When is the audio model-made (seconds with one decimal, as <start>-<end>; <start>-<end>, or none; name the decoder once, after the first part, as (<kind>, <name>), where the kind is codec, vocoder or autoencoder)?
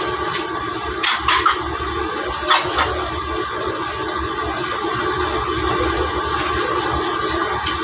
none